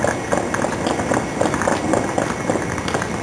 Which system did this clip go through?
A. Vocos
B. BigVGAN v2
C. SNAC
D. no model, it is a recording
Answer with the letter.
D